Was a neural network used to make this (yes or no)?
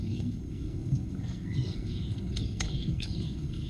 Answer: yes